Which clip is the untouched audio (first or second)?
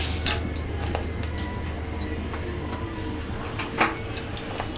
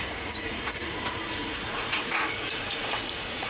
first